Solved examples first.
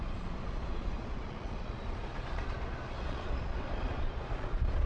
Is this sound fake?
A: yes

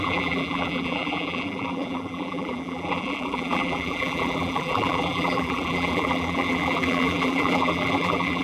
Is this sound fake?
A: yes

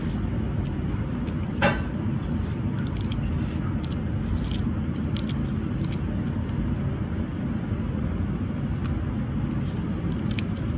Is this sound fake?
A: no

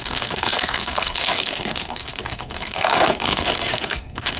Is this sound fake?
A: yes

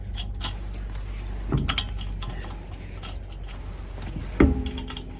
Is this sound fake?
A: no